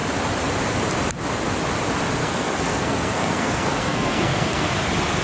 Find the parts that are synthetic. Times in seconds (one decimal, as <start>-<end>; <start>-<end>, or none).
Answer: 2.2-4.7